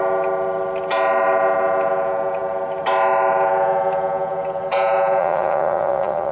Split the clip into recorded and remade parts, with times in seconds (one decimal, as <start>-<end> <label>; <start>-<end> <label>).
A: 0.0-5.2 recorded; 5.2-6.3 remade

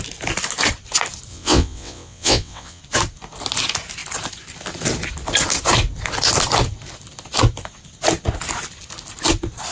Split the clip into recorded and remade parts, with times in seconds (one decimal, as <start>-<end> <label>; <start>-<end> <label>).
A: 0.0-1.3 recorded; 1.3-2.8 remade; 2.8-9.7 recorded

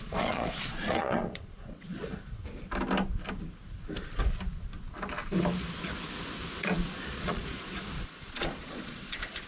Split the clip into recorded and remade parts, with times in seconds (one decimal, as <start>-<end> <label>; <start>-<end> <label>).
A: 0.0-2.4 remade; 2.4-6.6 recorded; 6.6-9.5 remade

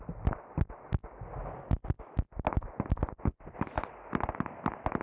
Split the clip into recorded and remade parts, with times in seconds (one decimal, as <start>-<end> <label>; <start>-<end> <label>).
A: 0.0-5.0 recorded

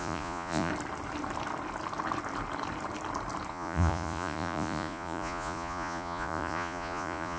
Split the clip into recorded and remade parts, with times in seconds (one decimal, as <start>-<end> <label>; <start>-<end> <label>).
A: 0.0-0.7 remade; 0.7-3.5 recorded; 3.5-7.4 remade

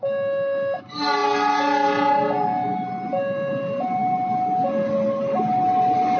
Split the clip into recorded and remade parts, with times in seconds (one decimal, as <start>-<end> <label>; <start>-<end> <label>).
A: 0.0-6.2 recorded